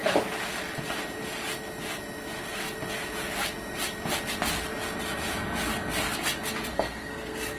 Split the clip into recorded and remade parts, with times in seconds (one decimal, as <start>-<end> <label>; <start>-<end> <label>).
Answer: 0.0-6.7 recorded; 6.7-7.6 remade